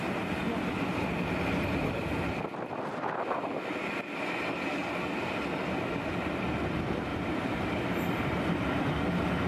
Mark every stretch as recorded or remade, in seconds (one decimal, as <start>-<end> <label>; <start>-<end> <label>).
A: 0.0-7.1 recorded; 7.1-8.8 remade; 8.8-9.5 recorded